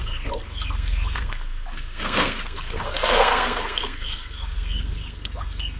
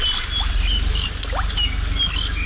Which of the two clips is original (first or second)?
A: second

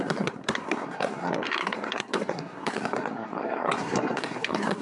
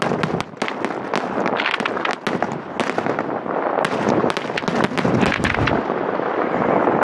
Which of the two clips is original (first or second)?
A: second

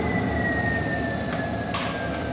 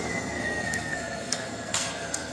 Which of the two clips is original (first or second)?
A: first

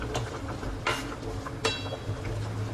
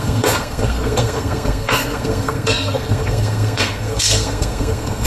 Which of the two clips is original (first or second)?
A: first